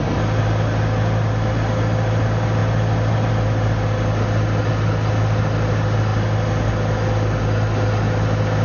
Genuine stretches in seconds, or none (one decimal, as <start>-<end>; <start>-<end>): 0.0-8.6